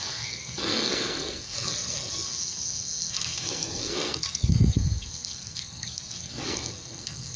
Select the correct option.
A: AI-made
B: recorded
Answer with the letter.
A